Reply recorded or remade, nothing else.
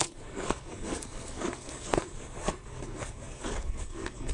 remade